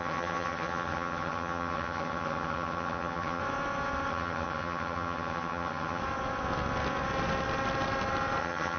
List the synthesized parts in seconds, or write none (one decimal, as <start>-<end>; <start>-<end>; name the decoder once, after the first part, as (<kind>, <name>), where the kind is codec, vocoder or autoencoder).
0.0-3.4 (vocoder, HiFi-GAN); 4.1-6.0; 8.4-8.8